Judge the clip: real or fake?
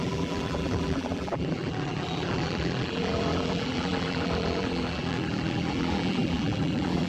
fake